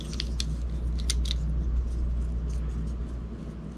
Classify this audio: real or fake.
real